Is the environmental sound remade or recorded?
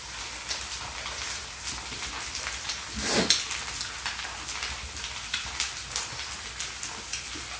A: recorded